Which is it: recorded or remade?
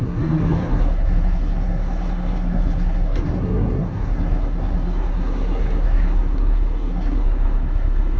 remade